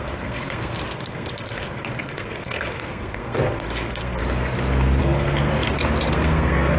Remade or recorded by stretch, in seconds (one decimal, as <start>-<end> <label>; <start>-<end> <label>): 0.0-4.2 remade; 4.2-5.0 recorded; 5.0-5.5 remade; 5.5-6.1 recorded; 6.1-6.8 remade